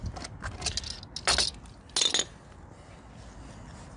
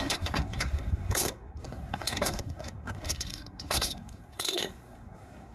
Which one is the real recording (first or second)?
first